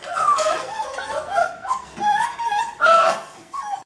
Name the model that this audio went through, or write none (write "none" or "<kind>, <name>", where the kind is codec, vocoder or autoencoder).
codec, SNAC